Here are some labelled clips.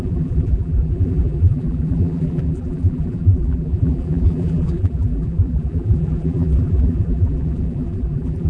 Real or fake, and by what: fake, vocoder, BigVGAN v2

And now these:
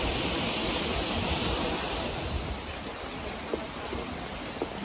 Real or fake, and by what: real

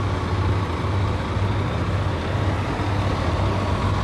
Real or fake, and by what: real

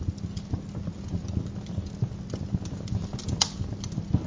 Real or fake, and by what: real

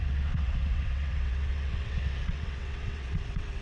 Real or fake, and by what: fake, vocoder, WaveNeXt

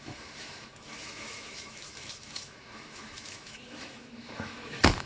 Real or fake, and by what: fake, autoencoder, DAC-VAE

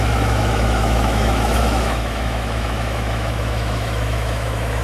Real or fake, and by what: fake, autoencoder, DAC-VAE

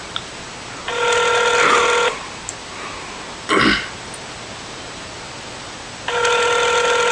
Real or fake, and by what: real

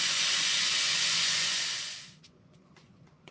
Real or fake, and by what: fake, vocoder, Vocos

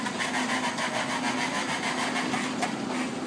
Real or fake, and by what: real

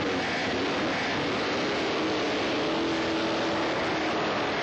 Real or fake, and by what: real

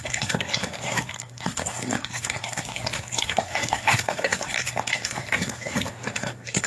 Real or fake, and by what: fake, codec, SNAC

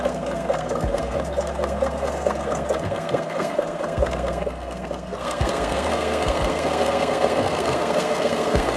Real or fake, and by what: fake, codec, SNAC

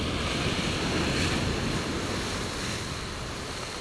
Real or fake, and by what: real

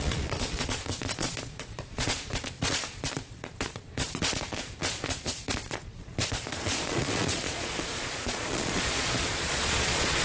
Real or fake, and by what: fake, vocoder, Vocos